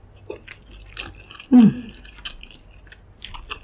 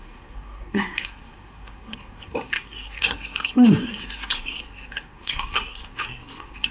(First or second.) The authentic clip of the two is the first